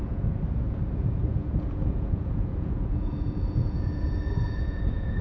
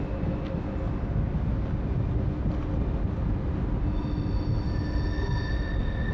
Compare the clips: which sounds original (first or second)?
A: second